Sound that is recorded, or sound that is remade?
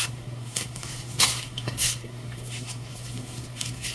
remade